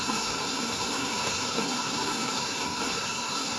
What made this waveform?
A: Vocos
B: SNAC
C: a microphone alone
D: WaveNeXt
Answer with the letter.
B